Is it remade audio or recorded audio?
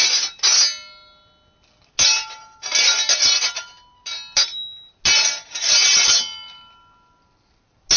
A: recorded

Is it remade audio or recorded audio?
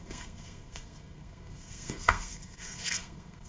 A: remade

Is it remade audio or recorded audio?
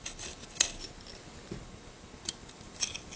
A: recorded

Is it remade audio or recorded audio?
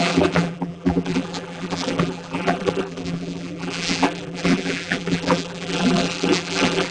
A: remade